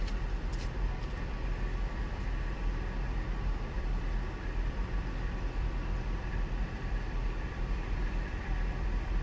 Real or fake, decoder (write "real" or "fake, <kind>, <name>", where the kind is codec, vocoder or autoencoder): fake, vocoder, BigVGAN v2